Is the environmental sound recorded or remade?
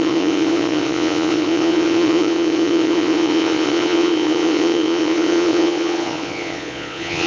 remade